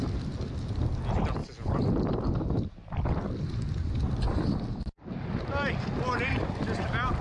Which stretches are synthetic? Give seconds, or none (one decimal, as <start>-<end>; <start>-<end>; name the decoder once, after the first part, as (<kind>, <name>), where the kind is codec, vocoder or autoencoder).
none